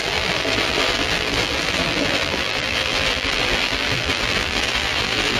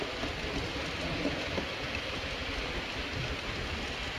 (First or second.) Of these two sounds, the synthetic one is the first